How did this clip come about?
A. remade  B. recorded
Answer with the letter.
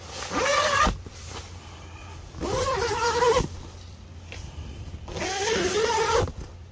B